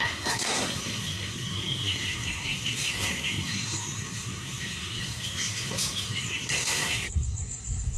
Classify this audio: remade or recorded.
remade